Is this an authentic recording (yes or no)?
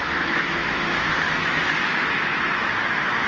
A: no